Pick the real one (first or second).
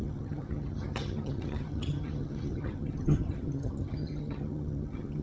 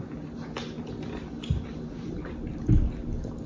second